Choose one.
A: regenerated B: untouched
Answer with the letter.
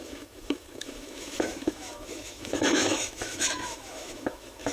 A